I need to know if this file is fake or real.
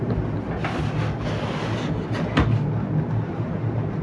real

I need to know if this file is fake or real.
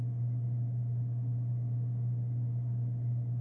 real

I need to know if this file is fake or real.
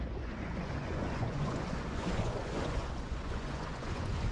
fake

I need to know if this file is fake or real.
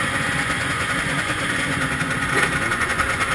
fake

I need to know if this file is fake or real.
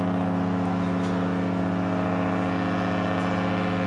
real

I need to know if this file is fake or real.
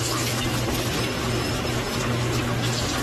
real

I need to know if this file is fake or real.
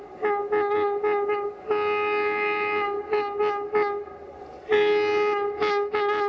real